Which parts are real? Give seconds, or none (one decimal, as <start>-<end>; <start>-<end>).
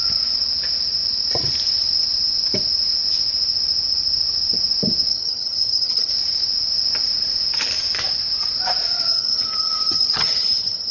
0.0-5.1; 6.1-9.1